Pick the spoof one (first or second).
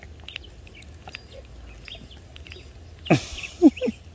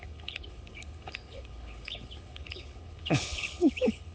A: second